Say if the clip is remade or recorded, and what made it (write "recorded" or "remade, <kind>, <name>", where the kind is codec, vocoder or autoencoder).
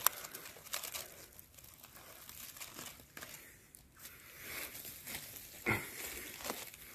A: recorded